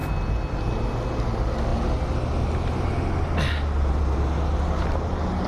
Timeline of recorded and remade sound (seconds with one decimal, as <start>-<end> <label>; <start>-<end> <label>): 0.0-5.5 recorded